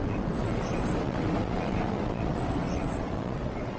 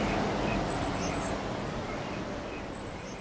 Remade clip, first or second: first